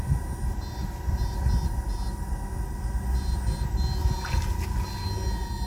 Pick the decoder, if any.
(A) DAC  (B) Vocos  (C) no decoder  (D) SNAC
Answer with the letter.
C